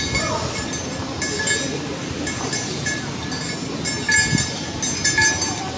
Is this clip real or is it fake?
real